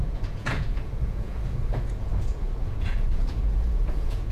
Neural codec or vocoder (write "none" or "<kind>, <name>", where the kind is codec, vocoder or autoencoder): vocoder, Vocos